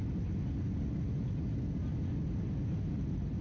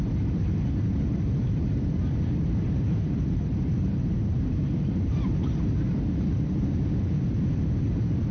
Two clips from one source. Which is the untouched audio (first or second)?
first